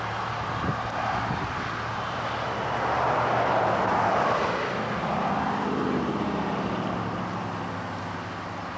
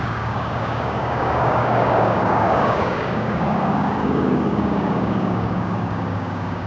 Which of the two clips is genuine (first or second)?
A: first